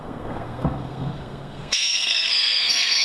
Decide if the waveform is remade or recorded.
remade